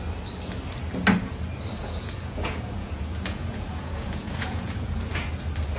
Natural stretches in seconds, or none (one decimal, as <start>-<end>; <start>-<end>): 0.0-1.8; 5.3-5.8